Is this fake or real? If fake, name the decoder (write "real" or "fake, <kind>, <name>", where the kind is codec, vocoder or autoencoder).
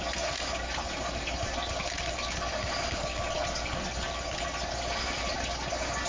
real